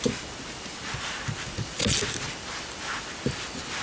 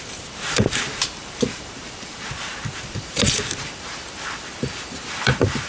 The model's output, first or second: second